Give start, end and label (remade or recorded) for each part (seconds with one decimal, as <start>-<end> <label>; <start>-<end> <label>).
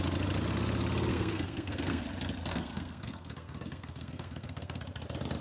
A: 0.0-1.1 recorded; 1.1-2.0 remade; 2.0-2.5 recorded; 2.5-4.8 remade; 4.8-5.4 recorded